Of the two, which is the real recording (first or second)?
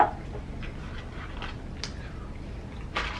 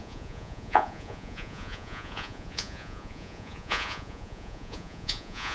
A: first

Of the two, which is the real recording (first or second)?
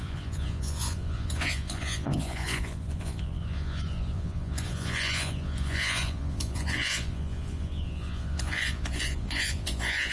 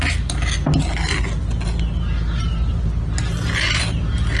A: second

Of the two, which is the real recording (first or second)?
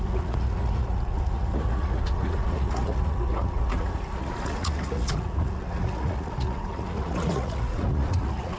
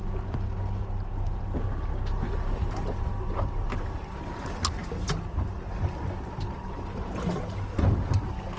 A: second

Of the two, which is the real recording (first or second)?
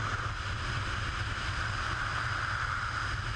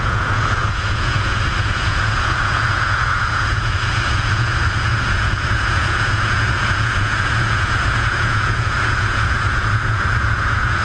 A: first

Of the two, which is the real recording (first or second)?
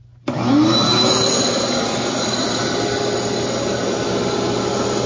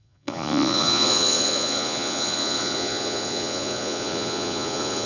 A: first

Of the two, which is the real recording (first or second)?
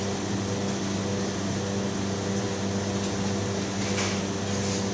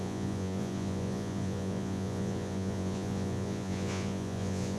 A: first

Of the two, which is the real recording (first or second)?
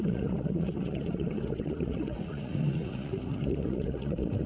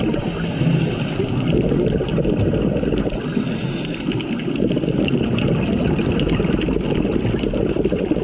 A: second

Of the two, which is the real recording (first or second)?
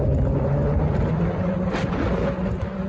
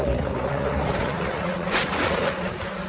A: first